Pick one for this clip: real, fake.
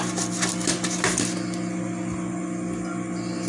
real